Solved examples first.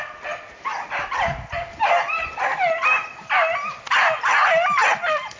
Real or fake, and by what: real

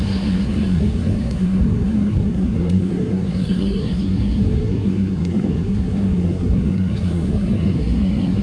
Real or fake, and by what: fake, codec, SNAC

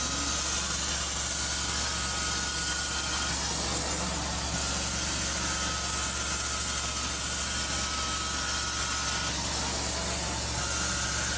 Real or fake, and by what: real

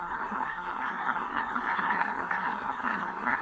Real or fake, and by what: fake, codec, SNAC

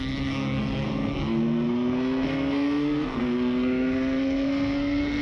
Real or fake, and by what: fake, codec, SNAC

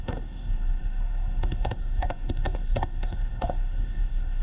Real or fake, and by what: fake, codec, SNAC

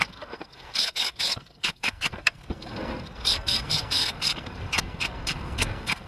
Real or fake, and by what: fake, codec, SNAC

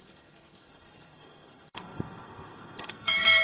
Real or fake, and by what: fake, codec, SNAC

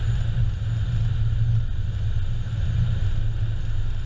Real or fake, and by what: real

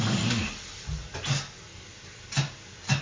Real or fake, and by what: real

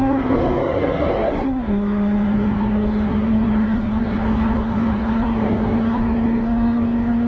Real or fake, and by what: fake, codec, SNAC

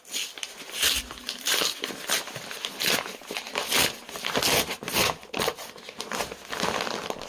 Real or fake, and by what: real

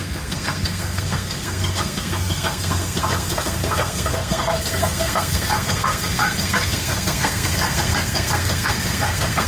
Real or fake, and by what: fake, codec, SNAC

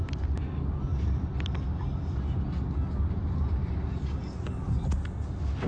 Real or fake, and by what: real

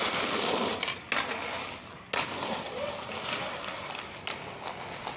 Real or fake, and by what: real